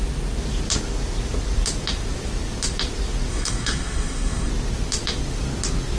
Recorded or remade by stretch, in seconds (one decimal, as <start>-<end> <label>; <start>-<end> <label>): 0.0-3.3 recorded; 3.3-4.5 remade; 4.5-6.0 recorded